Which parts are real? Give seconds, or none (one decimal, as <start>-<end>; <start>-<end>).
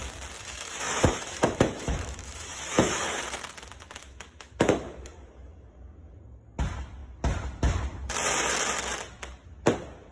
0.0-0.4; 3.2-4.0; 6.2-10.1